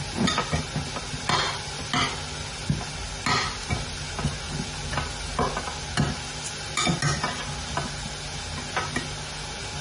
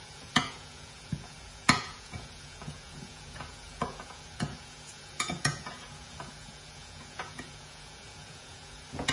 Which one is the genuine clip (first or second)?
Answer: first